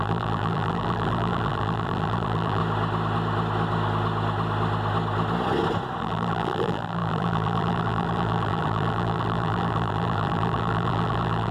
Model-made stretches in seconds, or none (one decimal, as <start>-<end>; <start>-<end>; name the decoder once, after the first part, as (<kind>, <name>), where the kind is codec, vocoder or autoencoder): 0.0-2.6 (vocoder, BigVGAN v2); 6.0-11.5